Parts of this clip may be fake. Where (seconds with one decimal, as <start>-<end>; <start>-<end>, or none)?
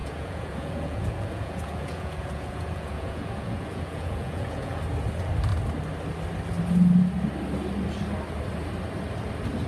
0.0-4.8